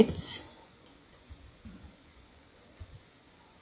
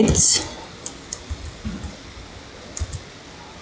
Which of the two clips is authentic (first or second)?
second